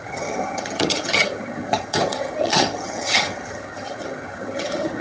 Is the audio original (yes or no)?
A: no